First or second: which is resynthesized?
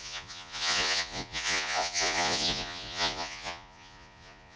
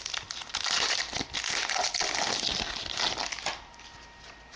first